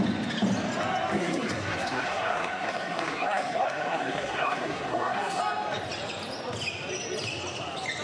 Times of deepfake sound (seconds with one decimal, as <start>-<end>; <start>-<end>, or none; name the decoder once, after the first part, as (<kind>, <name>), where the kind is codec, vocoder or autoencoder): 1.2-5.4 (codec, SNAC)